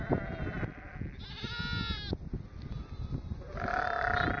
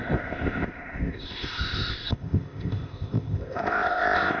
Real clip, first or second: first